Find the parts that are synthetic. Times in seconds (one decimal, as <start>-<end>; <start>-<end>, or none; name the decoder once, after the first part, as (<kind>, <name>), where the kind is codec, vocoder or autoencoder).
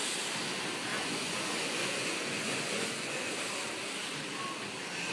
0.9-3.3 (vocoder, Vocos)